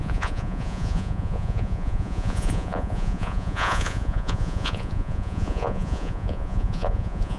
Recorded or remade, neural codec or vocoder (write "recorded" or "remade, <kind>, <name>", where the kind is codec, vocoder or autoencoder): remade, vocoder, Vocos